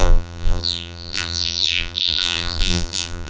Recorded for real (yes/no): no